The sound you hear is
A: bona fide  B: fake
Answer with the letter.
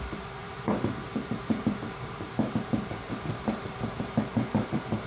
B